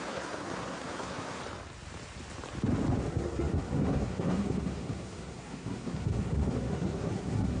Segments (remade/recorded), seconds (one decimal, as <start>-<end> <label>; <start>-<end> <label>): 0.0-1.4 remade; 1.4-3.1 recorded; 3.1-7.6 remade